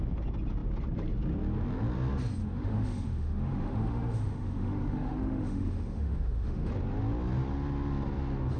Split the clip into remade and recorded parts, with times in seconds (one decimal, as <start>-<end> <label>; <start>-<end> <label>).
0.0-2.4 recorded; 2.4-6.7 remade; 6.7-8.6 recorded